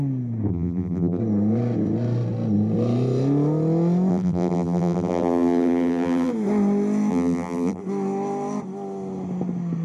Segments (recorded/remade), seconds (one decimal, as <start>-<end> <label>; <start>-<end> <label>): 0.0-0.5 recorded; 0.5-1.2 remade; 1.2-4.1 recorded; 4.1-6.3 remade; 6.3-7.1 recorded; 7.1-7.8 remade; 7.8-9.8 recorded